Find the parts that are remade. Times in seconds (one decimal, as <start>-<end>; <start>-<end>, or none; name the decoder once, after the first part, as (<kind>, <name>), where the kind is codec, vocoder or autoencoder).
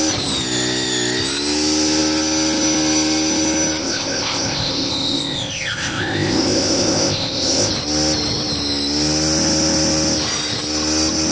3.8-7.7 (codec, ZipCodec)